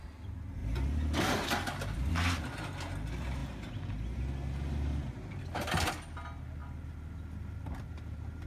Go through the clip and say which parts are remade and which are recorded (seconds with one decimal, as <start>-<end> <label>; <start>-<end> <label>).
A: 0.0-0.6 recorded; 0.6-2.1 remade; 2.1-8.5 recorded